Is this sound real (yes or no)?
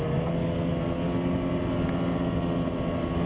yes